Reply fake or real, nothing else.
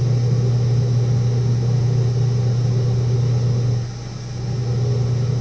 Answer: real